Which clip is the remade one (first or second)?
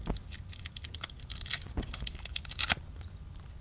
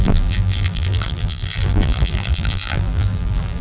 second